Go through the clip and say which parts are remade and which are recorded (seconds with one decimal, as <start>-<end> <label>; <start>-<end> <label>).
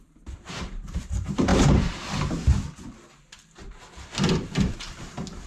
0.0-1.5 remade; 1.5-4.7 recorded; 4.7-5.5 remade